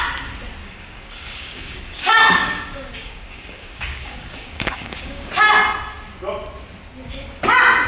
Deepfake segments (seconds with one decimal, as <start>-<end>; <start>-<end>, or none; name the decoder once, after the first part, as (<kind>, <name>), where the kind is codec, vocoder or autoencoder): 0.6-5.3 (codec, DAC)